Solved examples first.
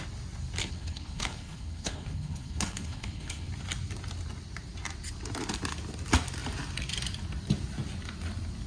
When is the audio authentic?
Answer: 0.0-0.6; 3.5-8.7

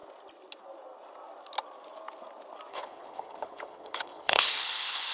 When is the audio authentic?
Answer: 0.0-2.7

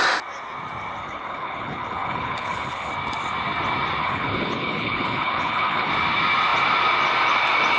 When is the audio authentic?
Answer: 0.0-1.0; 2.9-4.0; 5.9-7.8